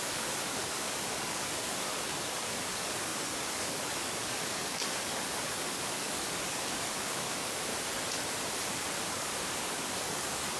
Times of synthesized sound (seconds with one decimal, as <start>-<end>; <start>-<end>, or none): 0.0-7.7; 9.1-10.6